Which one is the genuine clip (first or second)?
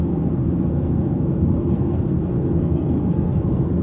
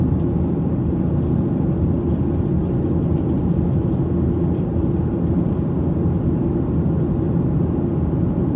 second